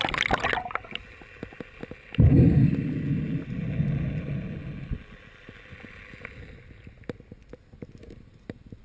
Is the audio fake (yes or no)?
no